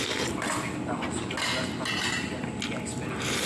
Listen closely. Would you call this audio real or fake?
real